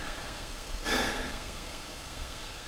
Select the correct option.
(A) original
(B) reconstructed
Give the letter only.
B